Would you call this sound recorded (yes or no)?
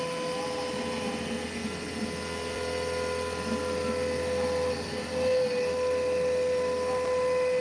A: yes